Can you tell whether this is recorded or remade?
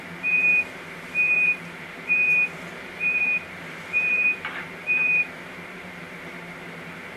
remade